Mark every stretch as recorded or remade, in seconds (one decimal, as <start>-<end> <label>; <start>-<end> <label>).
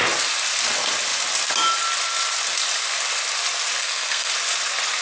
0.0-3.8 recorded; 3.8-4.3 remade; 4.3-5.0 recorded